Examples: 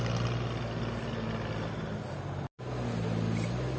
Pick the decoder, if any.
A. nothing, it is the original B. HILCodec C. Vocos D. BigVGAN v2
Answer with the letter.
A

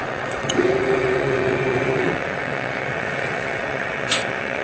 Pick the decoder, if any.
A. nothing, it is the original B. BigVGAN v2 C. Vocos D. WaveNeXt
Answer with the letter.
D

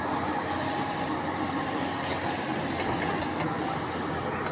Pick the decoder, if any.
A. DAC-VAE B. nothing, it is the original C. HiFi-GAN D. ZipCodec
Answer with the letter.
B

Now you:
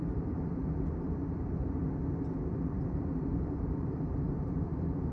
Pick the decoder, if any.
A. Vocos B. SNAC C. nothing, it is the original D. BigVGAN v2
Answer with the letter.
D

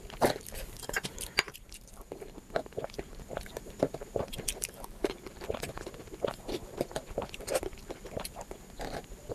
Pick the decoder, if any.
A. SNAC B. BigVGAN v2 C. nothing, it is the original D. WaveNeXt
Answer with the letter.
B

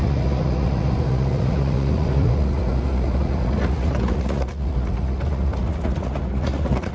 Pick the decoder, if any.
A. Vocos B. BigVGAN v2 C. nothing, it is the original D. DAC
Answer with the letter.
A